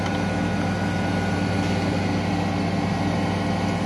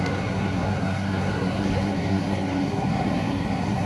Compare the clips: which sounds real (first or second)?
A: first